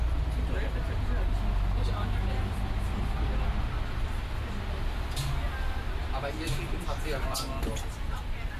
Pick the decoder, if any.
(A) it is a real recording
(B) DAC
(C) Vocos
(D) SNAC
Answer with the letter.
A